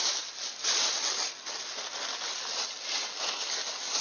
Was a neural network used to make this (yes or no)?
no